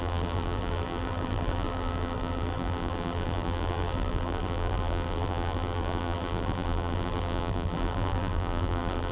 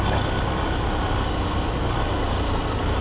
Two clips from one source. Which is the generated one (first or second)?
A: first